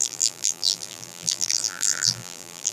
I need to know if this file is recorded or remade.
remade